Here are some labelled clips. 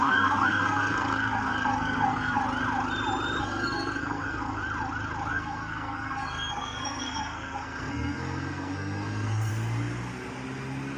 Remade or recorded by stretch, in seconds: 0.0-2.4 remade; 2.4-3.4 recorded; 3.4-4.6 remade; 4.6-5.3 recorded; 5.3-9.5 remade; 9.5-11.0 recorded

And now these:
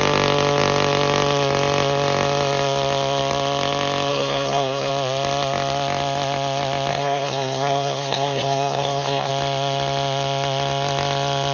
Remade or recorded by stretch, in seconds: 0.0-4.1 recorded; 4.1-4.9 remade; 4.9-6.9 recorded; 6.9-9.3 remade; 9.3-11.5 recorded